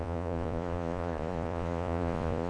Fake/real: fake